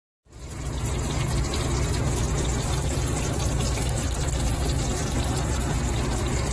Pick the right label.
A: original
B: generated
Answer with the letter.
B